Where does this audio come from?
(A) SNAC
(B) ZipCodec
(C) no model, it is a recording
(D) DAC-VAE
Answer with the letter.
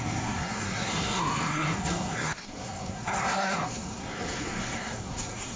A